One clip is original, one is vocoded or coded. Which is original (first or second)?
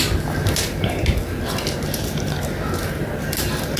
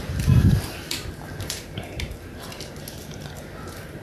first